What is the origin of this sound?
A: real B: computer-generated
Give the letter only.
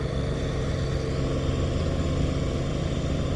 A